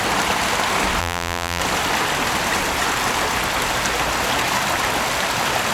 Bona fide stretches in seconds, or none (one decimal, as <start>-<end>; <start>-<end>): 0.0-1.0; 1.6-5.7